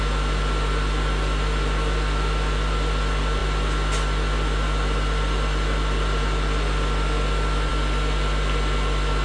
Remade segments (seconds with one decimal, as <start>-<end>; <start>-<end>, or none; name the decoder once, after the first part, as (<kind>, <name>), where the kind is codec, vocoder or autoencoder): none